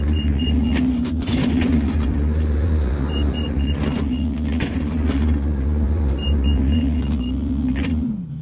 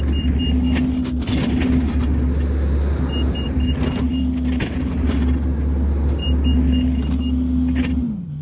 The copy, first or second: first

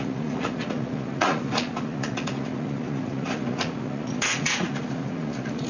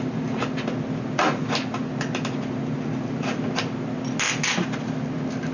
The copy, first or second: first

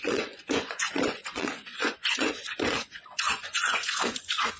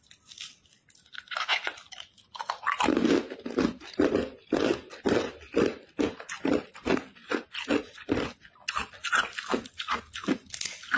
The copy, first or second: first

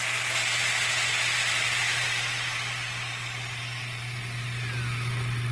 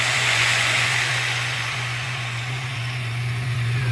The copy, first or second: second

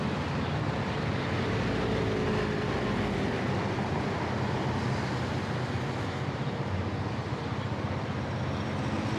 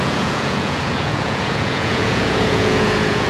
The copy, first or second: second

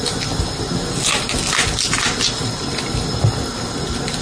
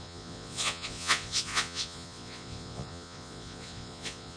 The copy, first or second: second